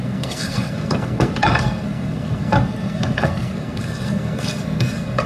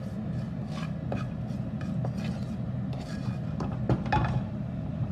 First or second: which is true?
second